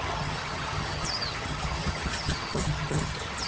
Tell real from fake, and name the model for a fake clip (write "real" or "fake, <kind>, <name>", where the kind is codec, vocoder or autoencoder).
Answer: fake, vocoder, HiFi-GAN